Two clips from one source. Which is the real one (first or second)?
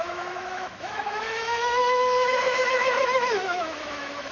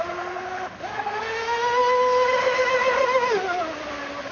second